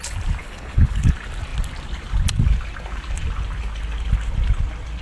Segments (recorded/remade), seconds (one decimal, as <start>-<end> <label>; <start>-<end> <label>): 0.0-0.4 recorded; 0.4-1.0 remade; 1.0-5.0 recorded